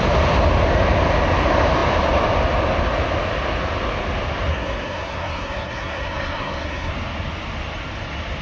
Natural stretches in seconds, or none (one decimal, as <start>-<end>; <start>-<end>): 0.0-4.5; 6.9-8.4